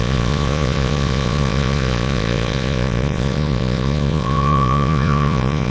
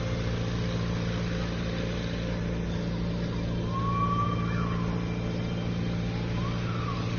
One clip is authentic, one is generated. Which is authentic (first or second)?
second